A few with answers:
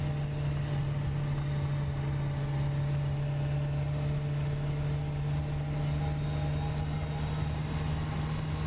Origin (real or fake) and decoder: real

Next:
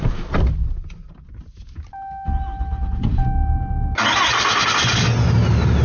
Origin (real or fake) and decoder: real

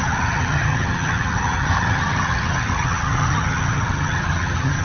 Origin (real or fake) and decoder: fake, vocoder, HiFi-GAN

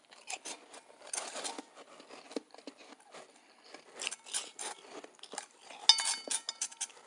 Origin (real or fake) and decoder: real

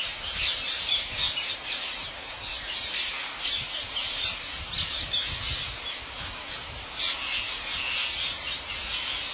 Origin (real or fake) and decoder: real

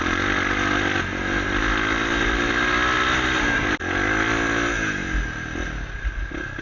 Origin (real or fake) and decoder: real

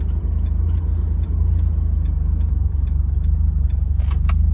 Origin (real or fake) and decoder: real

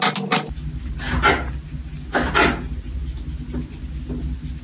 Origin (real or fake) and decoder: real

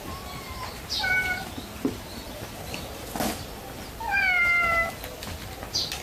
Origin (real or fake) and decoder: real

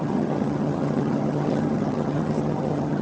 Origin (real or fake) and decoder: fake, vocoder, HiFi-GAN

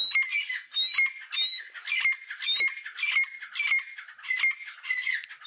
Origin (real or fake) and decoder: real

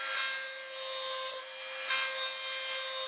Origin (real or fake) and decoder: real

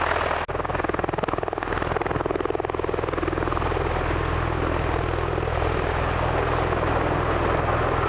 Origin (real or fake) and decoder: real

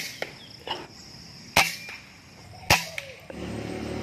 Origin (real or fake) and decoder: real